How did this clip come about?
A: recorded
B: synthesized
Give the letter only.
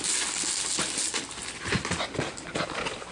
A